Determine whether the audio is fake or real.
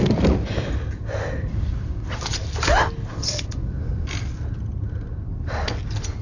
real